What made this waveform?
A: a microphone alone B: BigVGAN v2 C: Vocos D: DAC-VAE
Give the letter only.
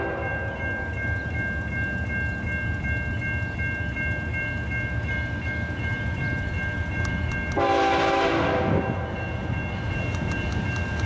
A